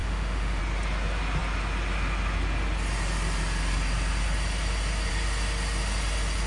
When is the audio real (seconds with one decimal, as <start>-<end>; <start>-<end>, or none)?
0.6-6.5